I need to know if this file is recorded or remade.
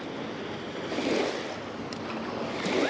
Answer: recorded